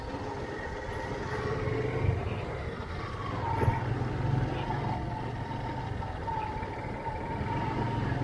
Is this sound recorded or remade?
recorded